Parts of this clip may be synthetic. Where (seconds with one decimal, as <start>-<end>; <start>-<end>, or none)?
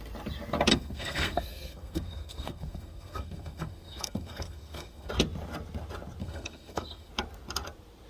0.7-5.1; 6.2-7.1